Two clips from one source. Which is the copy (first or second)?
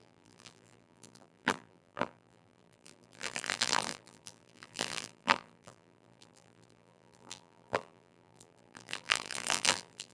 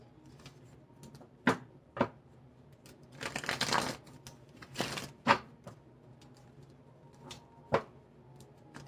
first